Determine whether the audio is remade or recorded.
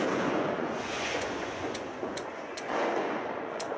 remade